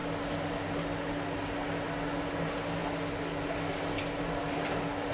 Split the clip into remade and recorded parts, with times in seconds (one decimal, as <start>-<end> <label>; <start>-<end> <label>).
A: 0.0-5.1 recorded